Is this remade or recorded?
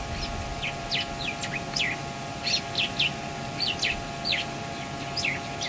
recorded